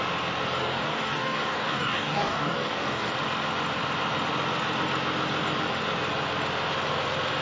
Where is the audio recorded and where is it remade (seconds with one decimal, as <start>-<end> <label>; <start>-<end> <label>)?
0.0-0.6 recorded; 0.6-3.1 remade; 3.1-7.4 recorded